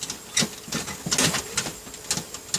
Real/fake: real